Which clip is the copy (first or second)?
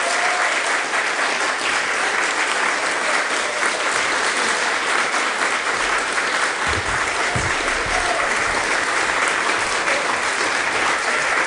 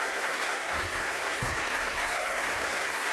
second